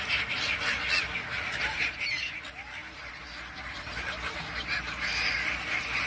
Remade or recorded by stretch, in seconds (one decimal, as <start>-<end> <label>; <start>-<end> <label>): 0.0-6.1 recorded